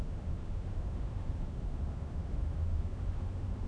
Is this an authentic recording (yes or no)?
no